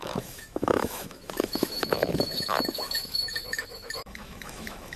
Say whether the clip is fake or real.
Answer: fake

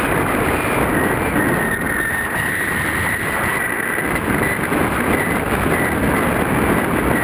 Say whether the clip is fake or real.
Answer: real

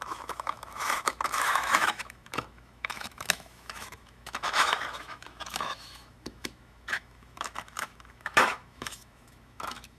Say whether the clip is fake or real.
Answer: fake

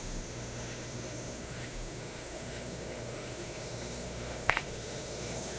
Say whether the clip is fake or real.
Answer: fake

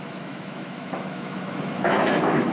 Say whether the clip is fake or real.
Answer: fake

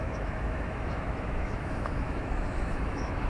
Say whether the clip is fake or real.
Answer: fake